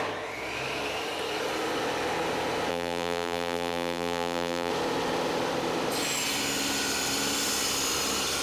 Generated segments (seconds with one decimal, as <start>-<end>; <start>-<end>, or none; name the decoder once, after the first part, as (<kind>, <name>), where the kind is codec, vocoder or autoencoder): 2.7-4.7 (vocoder, BigVGAN v2)